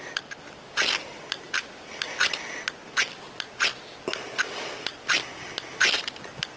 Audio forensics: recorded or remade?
recorded